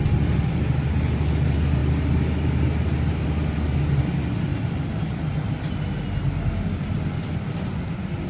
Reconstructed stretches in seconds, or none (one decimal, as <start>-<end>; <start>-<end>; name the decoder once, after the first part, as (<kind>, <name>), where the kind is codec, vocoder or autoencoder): none